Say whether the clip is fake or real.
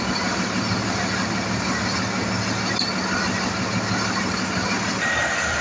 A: real